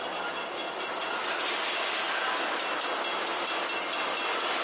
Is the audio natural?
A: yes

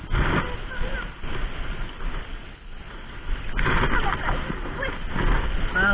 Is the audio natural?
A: yes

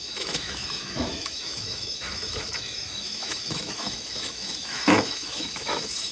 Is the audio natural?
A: no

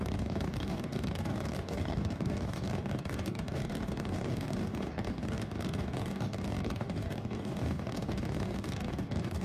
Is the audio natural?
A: no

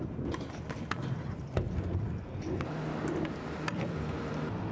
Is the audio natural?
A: yes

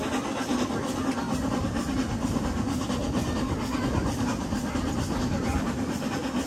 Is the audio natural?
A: yes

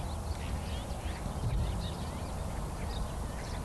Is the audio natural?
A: yes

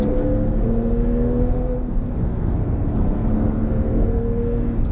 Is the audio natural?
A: no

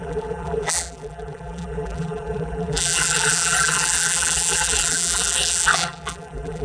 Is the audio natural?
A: no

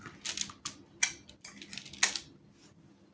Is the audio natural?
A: yes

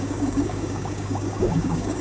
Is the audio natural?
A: no